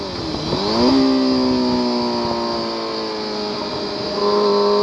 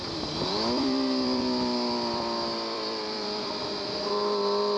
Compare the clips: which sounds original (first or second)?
first